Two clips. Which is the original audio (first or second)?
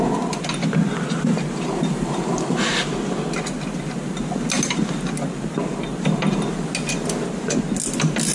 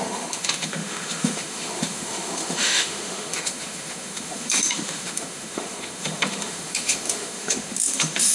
first